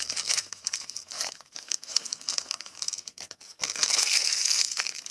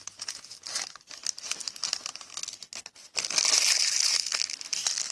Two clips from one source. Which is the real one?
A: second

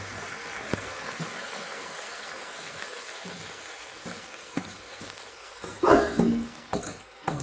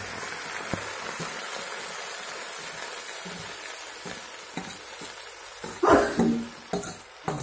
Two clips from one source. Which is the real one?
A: second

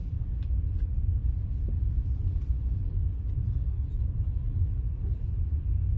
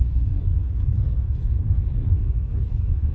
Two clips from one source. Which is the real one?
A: first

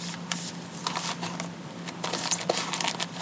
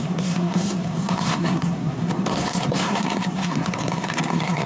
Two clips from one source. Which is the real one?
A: first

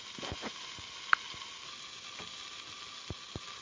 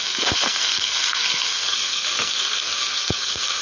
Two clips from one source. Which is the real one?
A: first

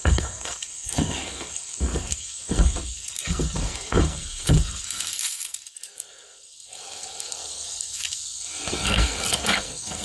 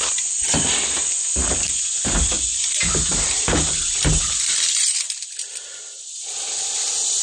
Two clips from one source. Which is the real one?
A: second